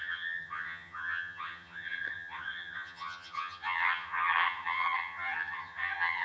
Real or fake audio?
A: fake